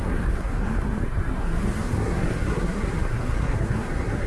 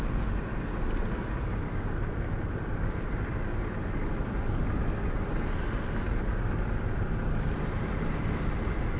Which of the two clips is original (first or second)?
second